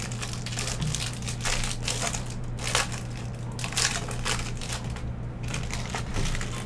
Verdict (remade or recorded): recorded